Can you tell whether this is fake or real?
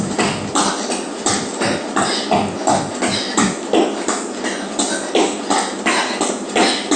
real